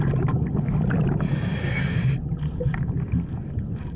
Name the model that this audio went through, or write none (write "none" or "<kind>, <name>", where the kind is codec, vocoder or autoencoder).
none